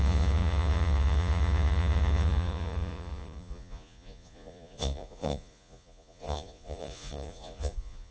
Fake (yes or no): yes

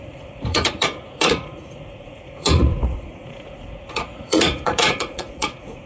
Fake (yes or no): yes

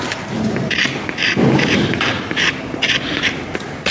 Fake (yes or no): no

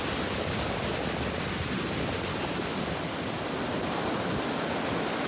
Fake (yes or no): no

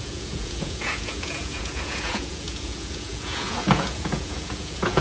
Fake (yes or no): yes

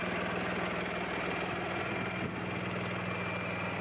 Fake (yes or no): no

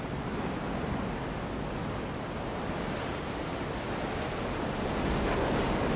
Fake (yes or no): no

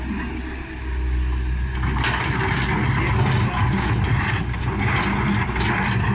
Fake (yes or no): no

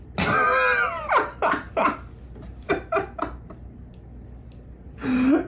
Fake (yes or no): no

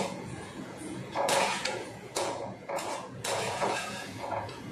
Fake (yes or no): yes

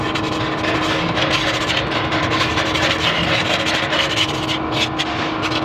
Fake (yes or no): no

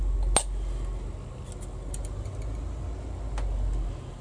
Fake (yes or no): no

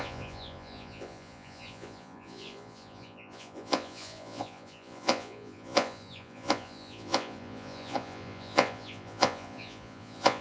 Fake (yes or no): yes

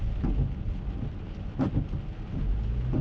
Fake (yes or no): no